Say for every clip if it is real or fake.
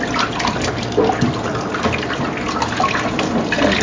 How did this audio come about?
real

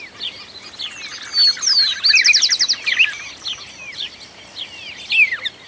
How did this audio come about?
real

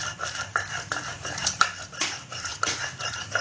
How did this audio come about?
fake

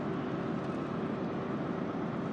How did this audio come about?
real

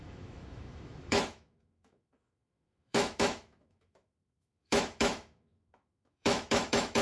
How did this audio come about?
fake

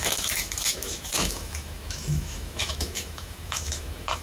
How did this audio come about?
fake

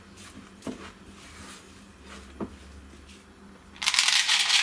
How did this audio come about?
real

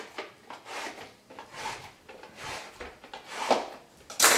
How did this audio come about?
real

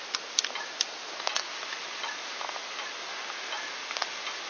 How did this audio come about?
real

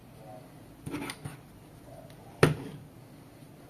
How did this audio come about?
real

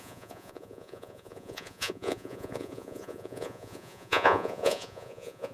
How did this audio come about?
fake